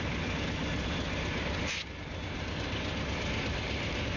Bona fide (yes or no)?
yes